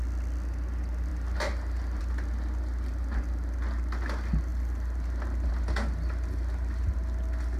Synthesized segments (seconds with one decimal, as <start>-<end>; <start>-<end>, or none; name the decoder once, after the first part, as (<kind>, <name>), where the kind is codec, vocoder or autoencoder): none